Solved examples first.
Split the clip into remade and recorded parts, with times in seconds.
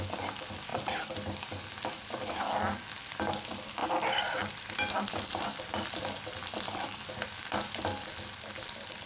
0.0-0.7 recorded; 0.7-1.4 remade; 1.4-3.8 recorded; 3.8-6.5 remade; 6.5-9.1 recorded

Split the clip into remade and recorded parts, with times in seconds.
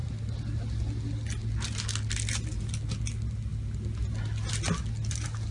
0.0-5.5 recorded